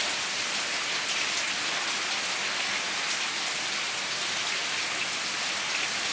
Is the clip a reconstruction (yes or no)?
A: no